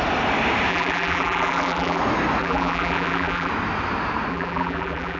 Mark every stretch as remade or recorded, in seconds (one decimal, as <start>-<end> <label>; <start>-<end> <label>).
0.0-0.7 recorded; 0.7-2.0 remade; 2.0-2.4 recorded; 2.4-3.5 remade; 3.5-4.3 recorded; 4.3-5.2 remade